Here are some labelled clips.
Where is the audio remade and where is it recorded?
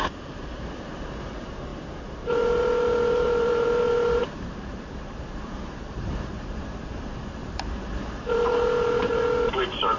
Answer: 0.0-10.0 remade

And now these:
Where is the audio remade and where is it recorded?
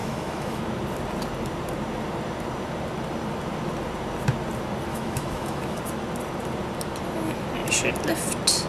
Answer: 0.0-0.6 remade; 0.6-4.9 recorded; 4.9-5.8 remade; 5.8-8.7 recorded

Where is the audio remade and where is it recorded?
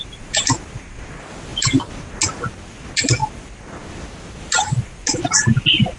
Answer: 0.0-6.0 recorded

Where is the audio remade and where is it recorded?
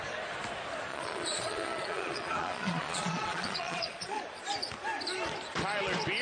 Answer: 0.0-0.9 recorded; 0.9-4.2 remade; 4.2-6.2 recorded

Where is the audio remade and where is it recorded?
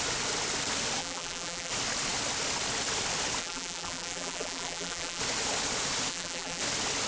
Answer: 0.0-1.0 recorded; 1.0-1.7 remade; 1.7-3.4 recorded; 3.4-5.2 remade; 5.2-6.1 recorded; 6.1-6.6 remade; 6.6-7.1 recorded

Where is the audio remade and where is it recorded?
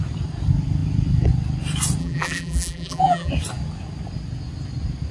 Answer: 0.0-2.0 recorded; 2.0-3.3 remade; 3.3-5.1 recorded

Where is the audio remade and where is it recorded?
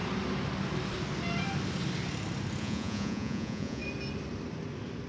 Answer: 0.0-2.6 recorded; 2.6-3.8 remade; 3.8-5.1 recorded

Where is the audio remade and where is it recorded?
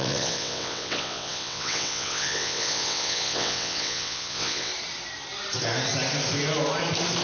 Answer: 0.0-4.7 remade; 4.7-7.2 recorded